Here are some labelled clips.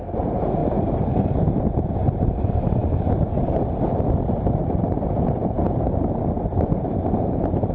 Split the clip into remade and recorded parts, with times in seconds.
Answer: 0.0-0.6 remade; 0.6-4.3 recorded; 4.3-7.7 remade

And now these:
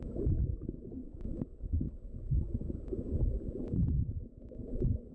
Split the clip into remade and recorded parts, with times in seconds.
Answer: 0.0-1.0 remade; 1.0-4.1 recorded; 4.1-5.1 remade

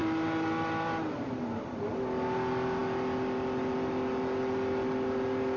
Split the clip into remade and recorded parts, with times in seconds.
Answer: 0.0-1.9 remade; 1.9-5.6 recorded

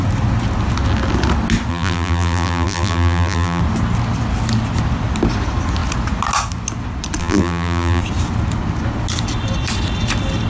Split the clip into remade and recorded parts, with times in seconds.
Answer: 0.0-1.7 recorded; 1.7-3.6 remade; 3.6-7.2 recorded; 7.2-8.0 remade; 8.0-10.5 recorded

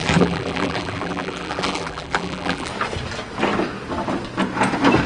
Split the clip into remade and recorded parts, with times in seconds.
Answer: 0.0-2.7 remade; 2.7-5.1 recorded